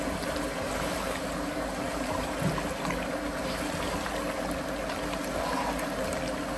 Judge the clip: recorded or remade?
recorded